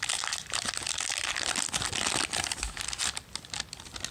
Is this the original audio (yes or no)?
yes